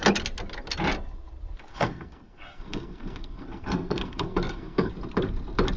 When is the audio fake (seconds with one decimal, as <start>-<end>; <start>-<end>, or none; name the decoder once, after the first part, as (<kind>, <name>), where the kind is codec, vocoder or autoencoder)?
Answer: 1.7-4.9 (codec, SNAC)